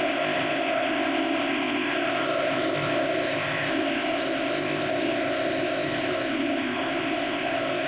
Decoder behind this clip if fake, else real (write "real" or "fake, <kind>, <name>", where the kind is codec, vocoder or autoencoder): fake, codec, ZipCodec